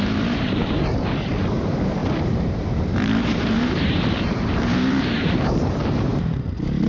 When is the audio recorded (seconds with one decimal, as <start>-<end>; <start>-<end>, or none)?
0.6-1.4; 2.0-2.7